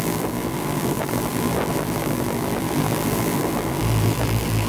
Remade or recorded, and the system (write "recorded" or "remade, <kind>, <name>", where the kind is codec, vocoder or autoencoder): remade, vocoder, BigVGAN v2